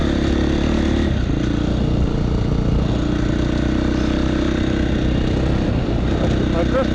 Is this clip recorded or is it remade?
recorded